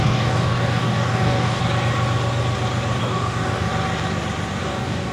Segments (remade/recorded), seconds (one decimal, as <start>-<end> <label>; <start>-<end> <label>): 0.0-1.6 remade; 1.6-3.0 recorded; 3.0-3.7 remade; 3.7-4.6 recorded; 4.6-5.1 remade